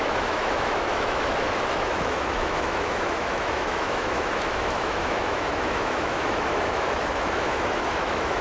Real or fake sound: fake